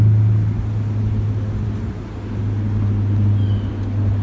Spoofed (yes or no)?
no